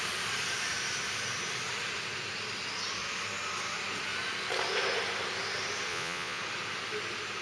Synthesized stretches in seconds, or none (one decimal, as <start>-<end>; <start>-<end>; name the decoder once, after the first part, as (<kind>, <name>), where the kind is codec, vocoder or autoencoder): 5.9-6.4 (vocoder, Vocos)